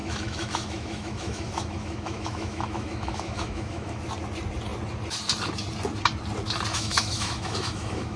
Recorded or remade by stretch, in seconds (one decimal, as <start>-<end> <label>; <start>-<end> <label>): 0.0-4.0 remade; 4.0-6.7 recorded; 6.7-8.2 remade

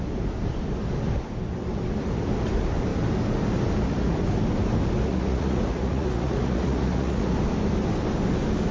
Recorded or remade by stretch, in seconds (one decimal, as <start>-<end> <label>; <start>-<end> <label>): 0.0-5.1 recorded; 5.1-7.3 remade; 7.3-8.7 recorded

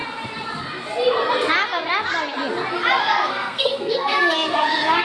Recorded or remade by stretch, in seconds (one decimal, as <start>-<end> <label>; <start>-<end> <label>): 0.0-3.0 recorded; 3.0-5.0 remade

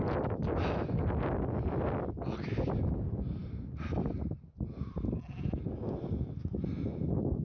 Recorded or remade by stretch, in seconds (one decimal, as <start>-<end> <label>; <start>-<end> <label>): 0.0-7.4 recorded

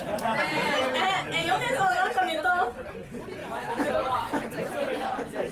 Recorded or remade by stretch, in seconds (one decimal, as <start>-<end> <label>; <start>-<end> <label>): 0.0-3.4 recorded; 3.4-3.9 remade; 3.9-5.5 recorded

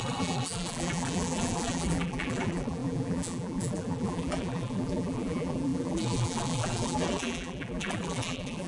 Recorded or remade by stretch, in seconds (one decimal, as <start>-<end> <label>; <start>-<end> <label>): 0.0-8.7 remade